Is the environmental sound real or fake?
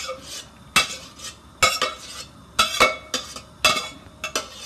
real